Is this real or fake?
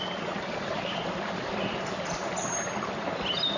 real